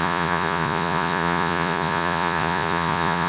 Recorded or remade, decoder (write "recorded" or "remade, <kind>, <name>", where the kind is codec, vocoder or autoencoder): remade, vocoder, Vocos